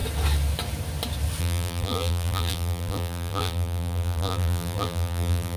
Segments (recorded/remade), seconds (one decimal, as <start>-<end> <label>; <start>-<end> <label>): 0.0-1.4 recorded; 1.4-5.6 remade